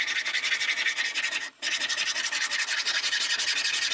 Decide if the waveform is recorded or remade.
recorded